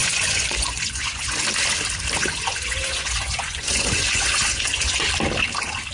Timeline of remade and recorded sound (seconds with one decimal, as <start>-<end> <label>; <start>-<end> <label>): 0.0-1.4 remade; 1.4-2.2 recorded; 2.2-5.1 remade; 5.1-5.9 recorded